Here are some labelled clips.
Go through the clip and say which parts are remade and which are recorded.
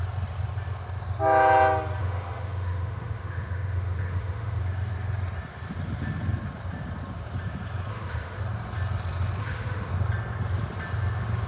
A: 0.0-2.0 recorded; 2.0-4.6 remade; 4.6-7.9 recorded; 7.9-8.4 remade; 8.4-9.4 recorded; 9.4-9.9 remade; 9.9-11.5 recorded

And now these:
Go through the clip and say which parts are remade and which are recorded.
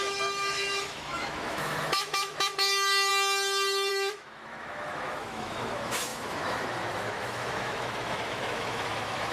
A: 0.0-3.1 remade; 3.1-3.9 recorded; 3.9-9.3 remade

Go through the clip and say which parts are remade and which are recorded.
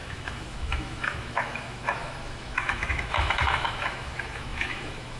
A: 0.0-5.2 remade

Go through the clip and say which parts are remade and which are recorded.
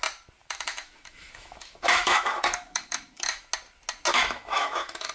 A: 0.0-0.4 recorded; 0.4-3.5 remade; 3.5-4.1 recorded; 4.1-5.1 remade